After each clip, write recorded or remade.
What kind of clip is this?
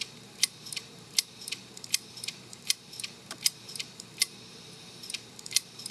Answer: remade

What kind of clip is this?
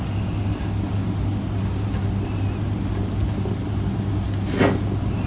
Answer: recorded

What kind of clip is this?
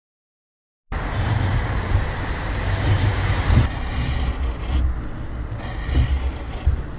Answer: recorded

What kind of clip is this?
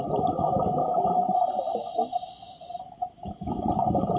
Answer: recorded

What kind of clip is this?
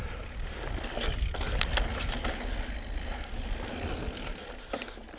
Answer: recorded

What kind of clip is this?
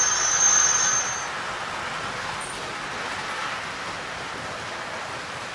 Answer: recorded